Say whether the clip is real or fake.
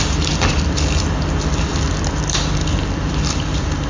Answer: fake